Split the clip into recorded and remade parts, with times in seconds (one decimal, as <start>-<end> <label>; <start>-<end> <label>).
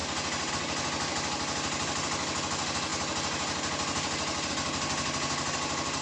0.0-6.0 recorded